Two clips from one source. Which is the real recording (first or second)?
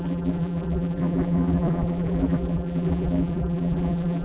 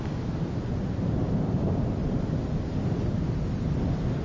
second